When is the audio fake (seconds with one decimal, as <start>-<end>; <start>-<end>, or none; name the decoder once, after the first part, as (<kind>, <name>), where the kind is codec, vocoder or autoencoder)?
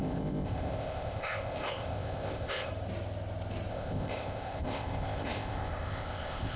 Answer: 0.0-2.7 (codec, ZipCodec); 3.7-6.6